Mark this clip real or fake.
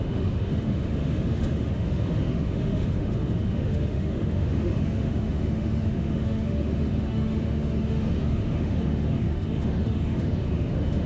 fake